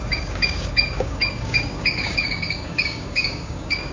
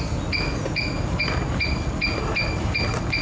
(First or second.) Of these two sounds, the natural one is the second